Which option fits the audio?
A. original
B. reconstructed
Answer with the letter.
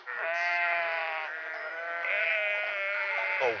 B